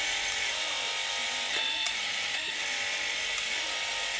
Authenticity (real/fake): fake